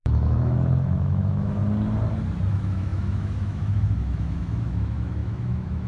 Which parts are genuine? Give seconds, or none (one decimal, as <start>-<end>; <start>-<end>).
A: 1.6-2.5